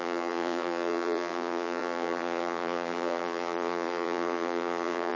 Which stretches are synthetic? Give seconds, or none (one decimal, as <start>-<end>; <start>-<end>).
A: 0.0-5.1